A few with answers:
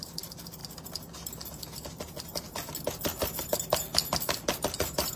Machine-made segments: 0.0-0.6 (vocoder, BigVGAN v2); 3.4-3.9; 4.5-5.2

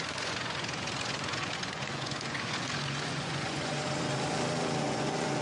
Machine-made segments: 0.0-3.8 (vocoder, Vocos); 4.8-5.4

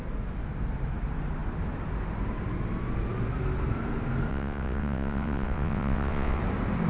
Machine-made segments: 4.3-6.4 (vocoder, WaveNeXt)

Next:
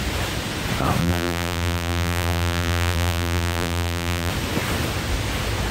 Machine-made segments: 1.0-4.3 (vocoder, BigVGAN v2)

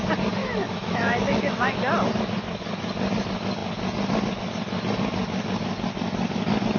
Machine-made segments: 0.4-1.8 (autoencoder, DAC-VAE)

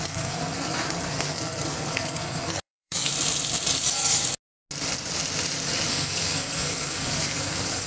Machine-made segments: 0.0-3.1 (codec, SNAC); 5.9-7.9